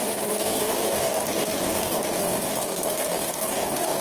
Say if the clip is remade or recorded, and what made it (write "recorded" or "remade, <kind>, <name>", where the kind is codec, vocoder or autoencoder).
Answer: remade, codec, DAC